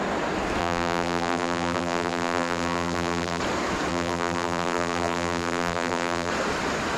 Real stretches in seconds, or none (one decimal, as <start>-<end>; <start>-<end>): 0.0-0.6; 3.4-3.9; 6.3-7.0